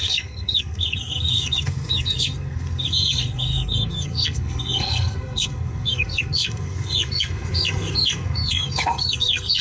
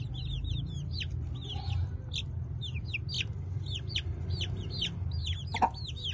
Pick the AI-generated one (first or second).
first